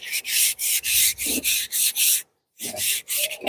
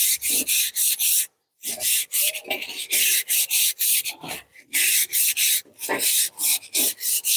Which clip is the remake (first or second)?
first